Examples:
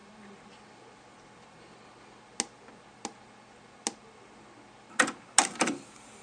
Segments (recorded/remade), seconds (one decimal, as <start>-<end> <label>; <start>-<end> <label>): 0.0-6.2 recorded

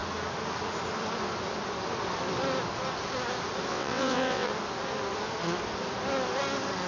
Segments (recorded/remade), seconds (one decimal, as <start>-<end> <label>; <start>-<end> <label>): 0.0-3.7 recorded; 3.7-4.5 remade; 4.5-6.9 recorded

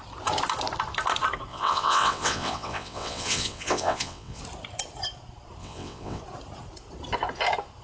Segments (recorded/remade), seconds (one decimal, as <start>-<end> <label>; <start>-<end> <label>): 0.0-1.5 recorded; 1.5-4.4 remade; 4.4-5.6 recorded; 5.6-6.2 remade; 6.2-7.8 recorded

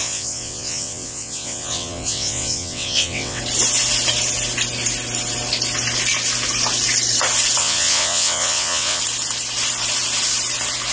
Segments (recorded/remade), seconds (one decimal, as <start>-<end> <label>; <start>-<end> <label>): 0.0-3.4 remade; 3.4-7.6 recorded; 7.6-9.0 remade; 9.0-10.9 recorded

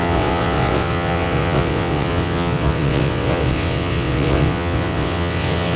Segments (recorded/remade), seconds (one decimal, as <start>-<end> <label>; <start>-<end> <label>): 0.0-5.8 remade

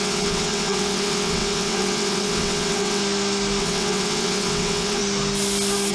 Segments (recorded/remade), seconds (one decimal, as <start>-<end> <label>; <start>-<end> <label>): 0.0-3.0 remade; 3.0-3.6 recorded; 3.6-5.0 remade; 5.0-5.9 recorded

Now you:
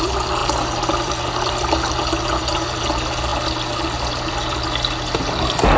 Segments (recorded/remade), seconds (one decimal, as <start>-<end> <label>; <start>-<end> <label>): 0.0-5.8 recorded